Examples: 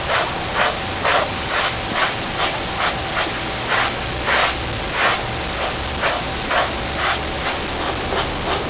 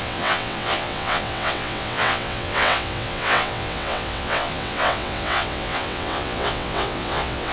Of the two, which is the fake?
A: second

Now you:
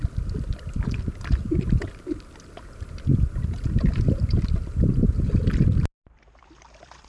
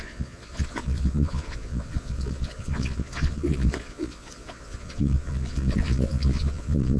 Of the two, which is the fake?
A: second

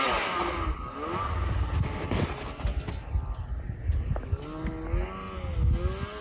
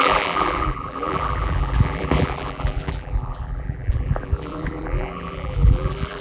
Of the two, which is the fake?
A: second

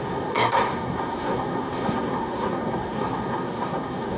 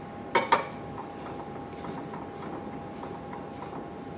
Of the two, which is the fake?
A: first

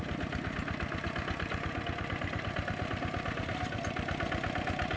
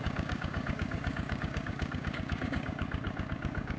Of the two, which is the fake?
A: second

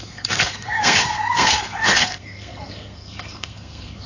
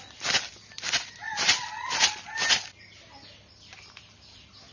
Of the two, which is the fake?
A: first